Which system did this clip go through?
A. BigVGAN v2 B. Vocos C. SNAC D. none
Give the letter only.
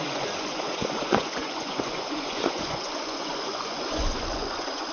B